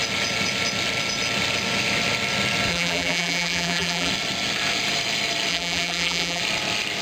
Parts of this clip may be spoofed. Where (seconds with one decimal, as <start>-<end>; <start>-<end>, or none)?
2.7-4.1; 5.5-6.4